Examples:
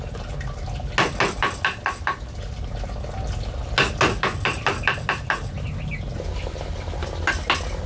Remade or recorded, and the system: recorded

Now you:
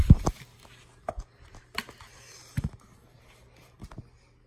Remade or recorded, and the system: recorded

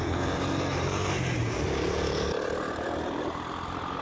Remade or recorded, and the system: recorded